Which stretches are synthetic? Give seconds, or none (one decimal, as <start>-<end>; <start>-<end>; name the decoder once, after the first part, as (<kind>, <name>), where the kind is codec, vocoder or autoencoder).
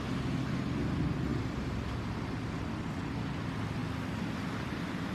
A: none